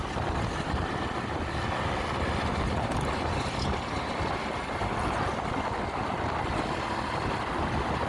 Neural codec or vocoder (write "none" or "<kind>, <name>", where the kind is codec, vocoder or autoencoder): none